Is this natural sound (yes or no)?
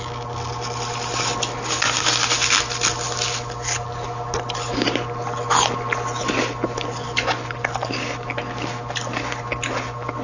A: yes